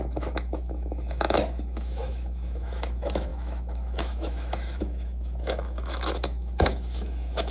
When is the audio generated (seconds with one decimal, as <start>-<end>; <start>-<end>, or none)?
0.0-7.5